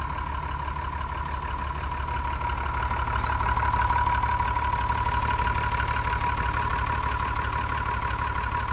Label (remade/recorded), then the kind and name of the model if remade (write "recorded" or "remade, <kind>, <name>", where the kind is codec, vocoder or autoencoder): recorded